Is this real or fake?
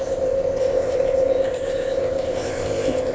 fake